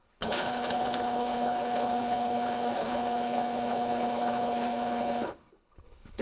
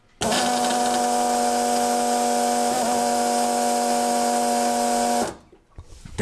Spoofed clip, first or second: first